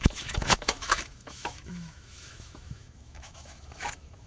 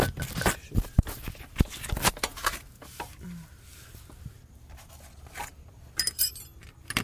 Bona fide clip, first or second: second